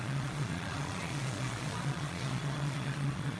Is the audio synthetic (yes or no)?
yes